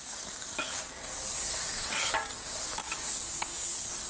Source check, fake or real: fake